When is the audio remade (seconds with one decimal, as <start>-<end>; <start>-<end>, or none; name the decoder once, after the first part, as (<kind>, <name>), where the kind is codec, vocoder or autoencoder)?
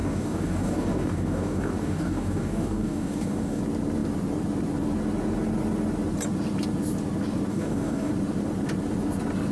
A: 0.0-3.6 (codec, DAC); 7.5-8.1